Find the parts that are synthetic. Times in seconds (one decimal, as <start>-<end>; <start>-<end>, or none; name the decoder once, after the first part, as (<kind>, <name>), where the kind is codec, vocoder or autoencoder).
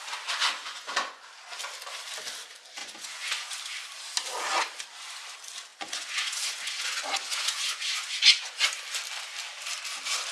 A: 0.6-1.2 (vocoder, Vocos); 2.8-3.5; 5.7-8.7